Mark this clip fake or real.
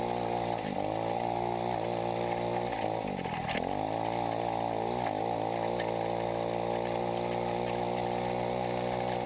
real